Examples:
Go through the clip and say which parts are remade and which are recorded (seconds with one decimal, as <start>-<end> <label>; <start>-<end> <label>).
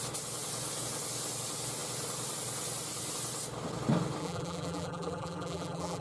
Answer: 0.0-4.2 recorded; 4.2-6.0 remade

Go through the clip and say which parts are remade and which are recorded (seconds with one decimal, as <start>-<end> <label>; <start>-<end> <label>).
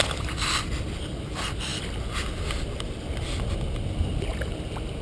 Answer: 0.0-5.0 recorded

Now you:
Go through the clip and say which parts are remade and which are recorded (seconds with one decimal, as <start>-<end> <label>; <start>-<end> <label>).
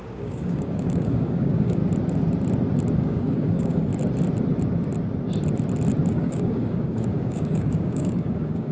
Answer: 0.0-1.8 remade; 1.8-3.0 recorded; 3.0-3.9 remade; 3.9-6.1 recorded; 6.1-8.7 remade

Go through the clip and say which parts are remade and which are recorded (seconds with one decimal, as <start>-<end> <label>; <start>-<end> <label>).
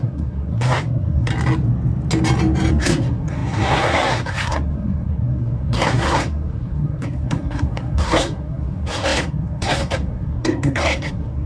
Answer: 0.0-1.3 remade; 1.3-2.7 recorded; 2.7-11.5 remade